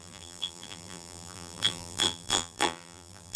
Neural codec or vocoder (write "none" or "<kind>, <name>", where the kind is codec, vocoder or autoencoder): vocoder, BigVGAN v2